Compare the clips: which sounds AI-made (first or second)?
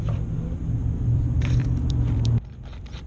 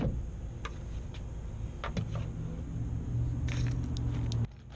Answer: first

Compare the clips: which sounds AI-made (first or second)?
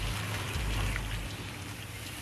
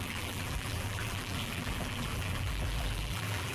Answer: second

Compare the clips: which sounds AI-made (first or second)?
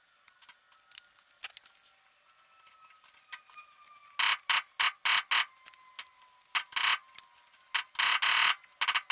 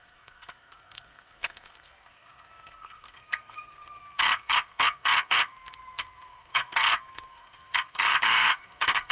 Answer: second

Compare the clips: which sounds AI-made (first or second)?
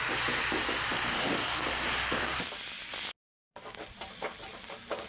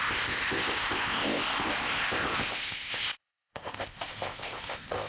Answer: second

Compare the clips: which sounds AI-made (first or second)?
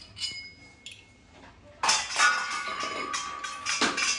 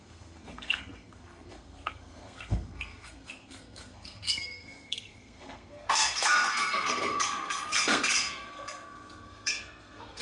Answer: second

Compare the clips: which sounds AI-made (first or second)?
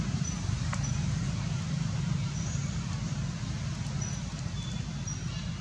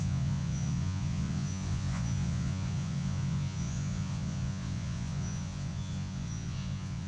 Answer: second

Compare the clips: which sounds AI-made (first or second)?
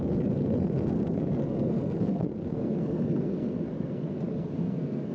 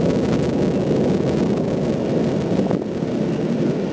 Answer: first